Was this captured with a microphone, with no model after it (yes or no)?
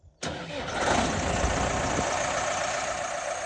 yes